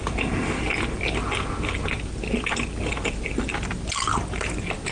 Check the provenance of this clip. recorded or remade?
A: recorded